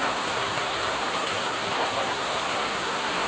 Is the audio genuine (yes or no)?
no